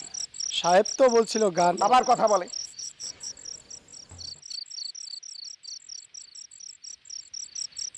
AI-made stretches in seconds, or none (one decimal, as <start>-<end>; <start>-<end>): 2.6-3.3